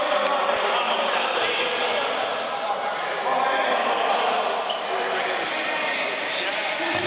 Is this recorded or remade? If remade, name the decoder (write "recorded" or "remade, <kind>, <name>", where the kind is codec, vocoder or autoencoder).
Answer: recorded